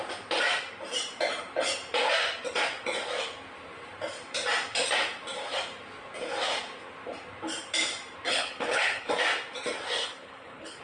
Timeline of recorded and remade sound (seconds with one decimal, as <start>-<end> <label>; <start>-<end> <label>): 0.0-8.3 recorded; 8.3-9.1 remade; 9.1-10.0 recorded; 10.0-10.8 remade